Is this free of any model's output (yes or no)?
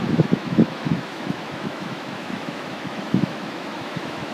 no